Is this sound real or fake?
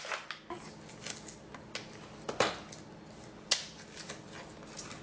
real